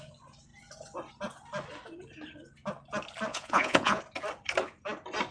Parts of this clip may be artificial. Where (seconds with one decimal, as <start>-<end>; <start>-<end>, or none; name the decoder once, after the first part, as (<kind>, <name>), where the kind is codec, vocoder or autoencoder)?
3.3-4.0 (vocoder, Vocos)